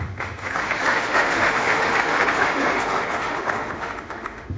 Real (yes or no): no